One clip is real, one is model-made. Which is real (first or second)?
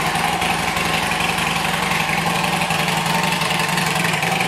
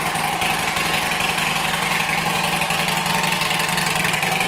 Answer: second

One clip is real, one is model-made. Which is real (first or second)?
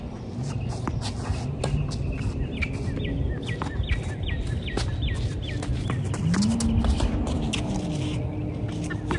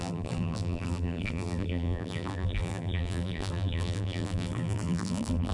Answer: first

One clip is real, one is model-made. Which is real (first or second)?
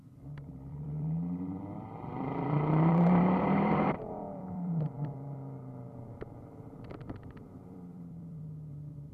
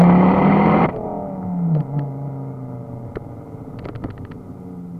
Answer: second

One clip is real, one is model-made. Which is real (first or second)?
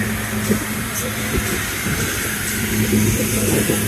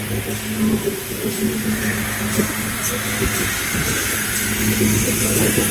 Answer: second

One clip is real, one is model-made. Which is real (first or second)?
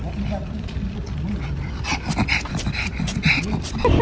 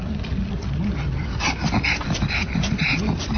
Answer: second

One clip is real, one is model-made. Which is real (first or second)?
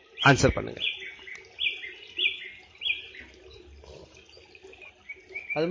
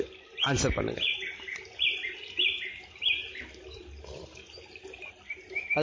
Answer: first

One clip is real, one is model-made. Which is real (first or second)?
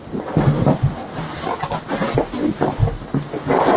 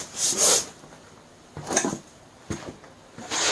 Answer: first